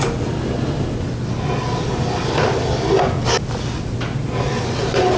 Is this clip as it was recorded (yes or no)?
yes